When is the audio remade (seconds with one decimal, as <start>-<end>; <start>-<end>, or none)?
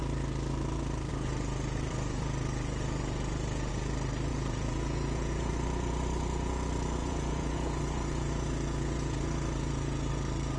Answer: 1.1-3.7; 4.3-5.5; 7.0-10.1